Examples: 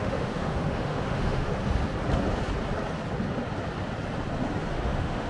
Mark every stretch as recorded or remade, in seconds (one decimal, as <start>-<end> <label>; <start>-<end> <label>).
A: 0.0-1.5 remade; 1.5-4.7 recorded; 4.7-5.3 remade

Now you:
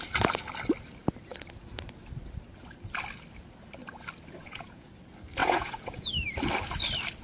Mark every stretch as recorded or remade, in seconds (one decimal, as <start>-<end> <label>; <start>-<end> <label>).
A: 0.0-4.4 recorded; 4.4-4.9 remade; 4.9-5.4 recorded; 5.4-6.1 remade; 6.1-7.2 recorded

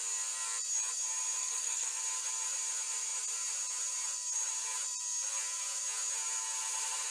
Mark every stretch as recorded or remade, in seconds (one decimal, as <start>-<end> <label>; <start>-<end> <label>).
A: 0.0-1.4 recorded; 1.4-2.0 remade; 2.0-7.1 recorded

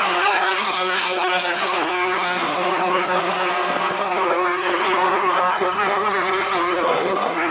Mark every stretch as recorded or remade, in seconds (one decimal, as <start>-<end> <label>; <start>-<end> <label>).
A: 0.0-3.5 remade; 3.5-4.0 recorded; 4.0-7.5 remade

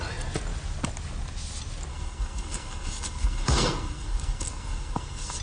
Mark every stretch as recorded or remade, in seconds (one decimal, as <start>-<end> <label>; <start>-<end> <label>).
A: 0.0-1.9 recorded; 1.9-5.4 remade

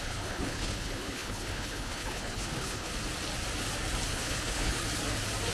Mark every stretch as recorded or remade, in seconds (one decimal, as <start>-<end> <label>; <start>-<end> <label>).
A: 0.0-2.9 remade; 2.9-4.1 recorded; 4.1-4.8 remade; 4.8-5.5 recorded